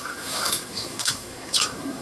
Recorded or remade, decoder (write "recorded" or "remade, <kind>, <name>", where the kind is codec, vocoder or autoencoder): remade, codec, SNAC